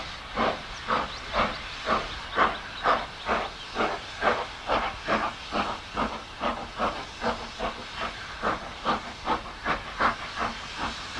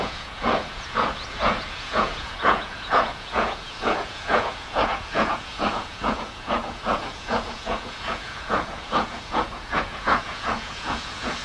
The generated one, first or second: second